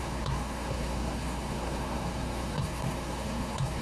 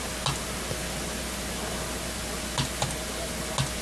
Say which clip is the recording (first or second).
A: second